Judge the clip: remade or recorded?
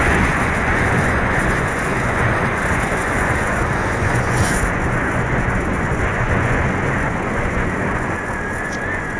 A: remade